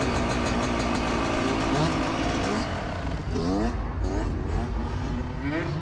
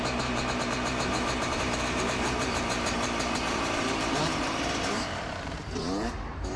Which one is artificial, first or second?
second